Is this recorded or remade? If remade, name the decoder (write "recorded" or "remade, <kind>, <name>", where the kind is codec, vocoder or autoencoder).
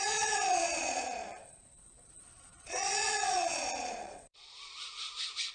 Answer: remade, vocoder, Vocos